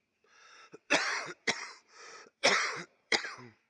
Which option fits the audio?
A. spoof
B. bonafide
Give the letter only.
A